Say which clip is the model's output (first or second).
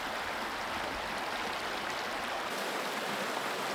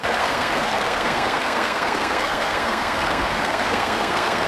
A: second